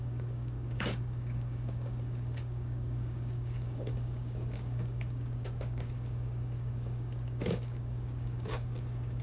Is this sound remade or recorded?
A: remade